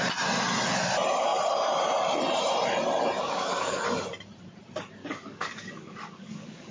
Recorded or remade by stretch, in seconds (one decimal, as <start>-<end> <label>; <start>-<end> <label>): 0.0-3.2 recorded; 3.2-3.8 remade; 3.8-5.0 recorded; 5.0-6.7 remade